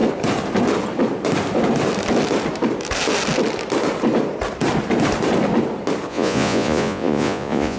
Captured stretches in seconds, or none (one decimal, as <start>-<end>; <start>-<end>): 0.0-6.1